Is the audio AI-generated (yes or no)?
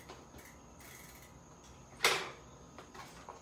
no